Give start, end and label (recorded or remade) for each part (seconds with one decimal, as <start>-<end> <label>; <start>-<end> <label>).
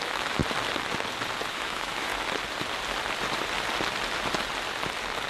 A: 0.0-0.4 remade; 0.4-1.5 recorded; 1.5-2.1 remade; 2.1-5.3 recorded